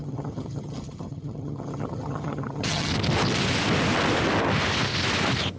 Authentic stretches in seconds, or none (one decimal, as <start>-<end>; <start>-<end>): 2.9-5.6